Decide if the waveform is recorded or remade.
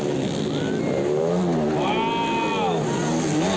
recorded